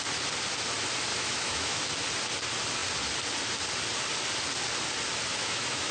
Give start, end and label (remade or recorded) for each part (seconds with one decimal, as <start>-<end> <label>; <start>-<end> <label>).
0.0-1.1 recorded; 1.1-1.8 remade; 1.8-5.3 recorded; 5.3-5.9 remade